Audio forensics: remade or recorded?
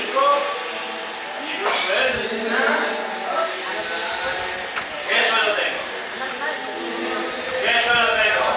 recorded